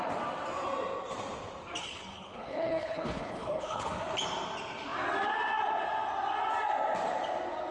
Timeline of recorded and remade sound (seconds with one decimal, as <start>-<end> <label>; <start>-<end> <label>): 0.0-1.8 recorded; 1.8-3.9 remade; 3.9-7.7 recorded